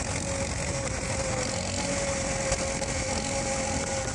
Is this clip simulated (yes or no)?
no